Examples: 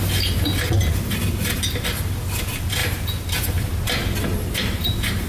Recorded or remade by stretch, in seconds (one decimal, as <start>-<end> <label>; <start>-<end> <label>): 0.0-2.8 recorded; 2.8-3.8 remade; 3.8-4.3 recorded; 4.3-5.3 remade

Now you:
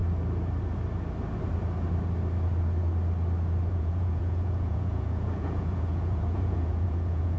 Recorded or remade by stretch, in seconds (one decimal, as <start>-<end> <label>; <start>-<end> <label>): 0.0-3.7 recorded; 3.7-7.4 remade

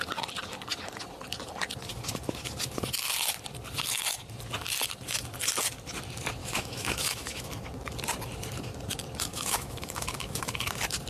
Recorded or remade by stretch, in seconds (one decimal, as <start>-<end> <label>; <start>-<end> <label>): 0.0-6.4 recorded; 6.4-7.5 remade; 7.5-9.3 recorded; 9.3-10.7 remade; 10.7-11.1 recorded

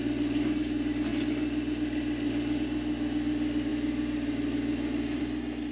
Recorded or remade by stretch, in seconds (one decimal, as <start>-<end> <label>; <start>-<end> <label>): 0.0-5.7 recorded